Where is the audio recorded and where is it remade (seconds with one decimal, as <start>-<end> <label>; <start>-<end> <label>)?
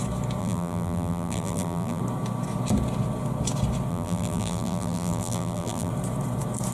0.0-0.4 recorded; 0.4-2.0 remade; 2.0-3.9 recorded; 3.9-5.9 remade; 5.9-6.7 recorded